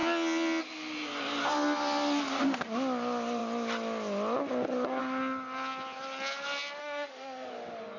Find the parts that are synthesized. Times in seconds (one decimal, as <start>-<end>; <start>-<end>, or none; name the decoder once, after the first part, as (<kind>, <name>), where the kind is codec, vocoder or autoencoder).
6.8-7.5 (autoencoder, DAC-VAE)